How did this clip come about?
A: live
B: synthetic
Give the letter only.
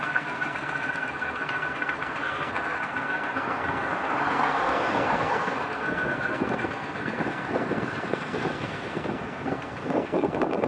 B